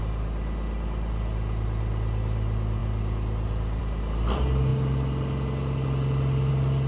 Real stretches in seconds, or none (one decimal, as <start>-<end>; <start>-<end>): 0.0-6.9